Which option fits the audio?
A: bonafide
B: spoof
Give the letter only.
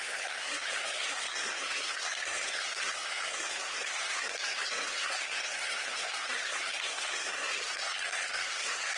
B